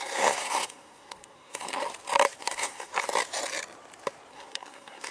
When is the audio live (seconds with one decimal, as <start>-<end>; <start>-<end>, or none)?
1.8-2.4; 2.9-4.3